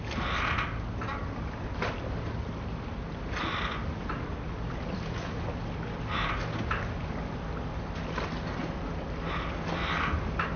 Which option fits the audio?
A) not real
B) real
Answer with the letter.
B